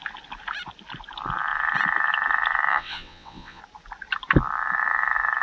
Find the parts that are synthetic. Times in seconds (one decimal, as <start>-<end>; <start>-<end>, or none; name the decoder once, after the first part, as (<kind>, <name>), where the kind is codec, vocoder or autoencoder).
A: 2.7-3.6 (vocoder, WaveNeXt)